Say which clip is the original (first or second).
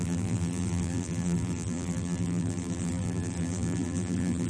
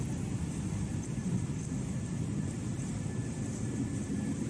second